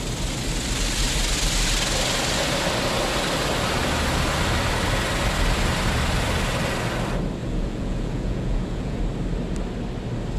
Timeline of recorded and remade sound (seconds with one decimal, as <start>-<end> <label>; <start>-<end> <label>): 0.0-7.4 recorded; 7.4-9.0 remade; 9.0-10.4 recorded

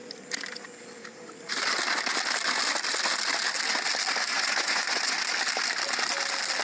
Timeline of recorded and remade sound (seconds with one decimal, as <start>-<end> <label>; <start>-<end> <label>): 0.0-4.3 recorded; 4.3-5.2 remade; 5.2-6.6 recorded